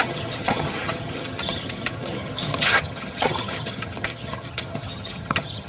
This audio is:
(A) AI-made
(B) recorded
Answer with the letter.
A